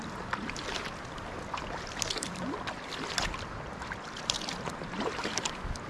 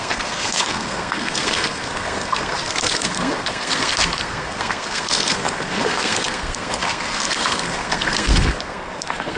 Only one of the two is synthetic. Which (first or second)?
second